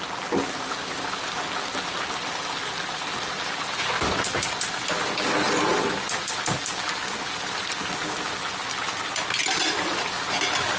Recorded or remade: recorded